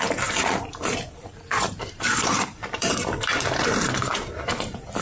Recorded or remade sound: remade